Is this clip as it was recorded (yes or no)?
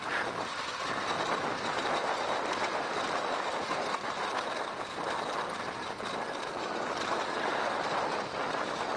yes